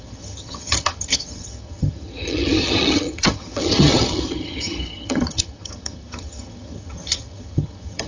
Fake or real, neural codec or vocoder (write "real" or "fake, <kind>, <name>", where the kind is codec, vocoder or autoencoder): fake, vocoder, HiFi-GAN